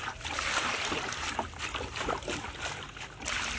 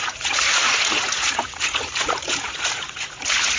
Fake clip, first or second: second